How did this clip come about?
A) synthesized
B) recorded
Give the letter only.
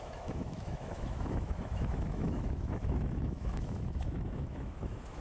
A